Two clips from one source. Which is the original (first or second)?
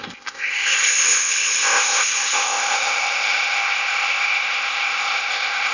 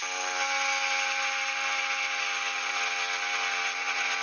second